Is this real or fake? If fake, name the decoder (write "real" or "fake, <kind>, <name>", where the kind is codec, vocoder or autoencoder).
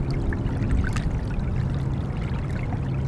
real